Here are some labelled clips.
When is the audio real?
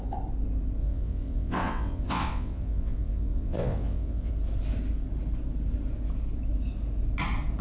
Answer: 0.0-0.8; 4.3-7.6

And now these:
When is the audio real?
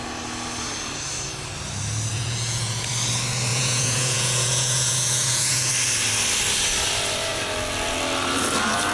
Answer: 0.0-2.1; 2.9-3.5; 5.7-8.9